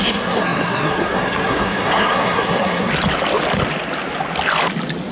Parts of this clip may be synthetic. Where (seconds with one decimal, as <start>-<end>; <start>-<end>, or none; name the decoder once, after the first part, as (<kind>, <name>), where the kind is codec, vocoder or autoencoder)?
0.0-2.9 (codec, SNAC)